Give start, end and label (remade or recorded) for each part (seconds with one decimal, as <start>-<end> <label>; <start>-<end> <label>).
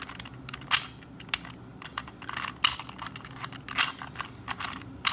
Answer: 0.0-5.1 recorded